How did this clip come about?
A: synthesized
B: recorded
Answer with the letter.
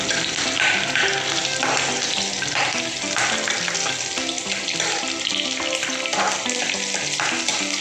B